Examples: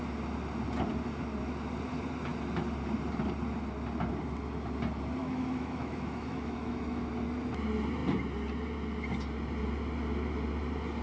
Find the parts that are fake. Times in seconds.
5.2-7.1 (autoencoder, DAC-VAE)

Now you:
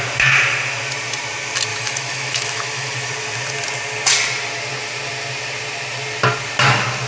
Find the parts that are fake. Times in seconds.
1.7-3.1 (autoencoder, DAC-VAE)

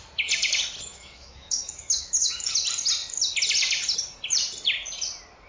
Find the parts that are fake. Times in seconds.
0.8-2.5 (autoencoder, DAC-VAE)